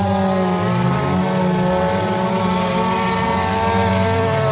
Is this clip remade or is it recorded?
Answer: recorded